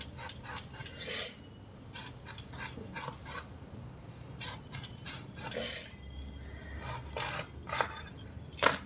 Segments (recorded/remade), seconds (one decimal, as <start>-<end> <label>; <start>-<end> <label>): 0.0-8.9 recorded